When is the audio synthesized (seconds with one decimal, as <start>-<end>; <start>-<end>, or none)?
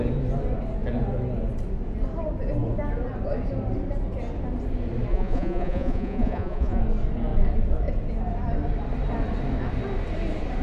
5.1-6.8